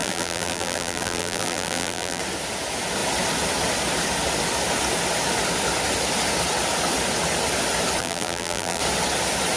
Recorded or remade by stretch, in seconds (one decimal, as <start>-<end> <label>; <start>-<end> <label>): 0.0-2.2 remade; 2.2-8.0 recorded; 8.0-8.8 remade; 8.8-9.6 recorded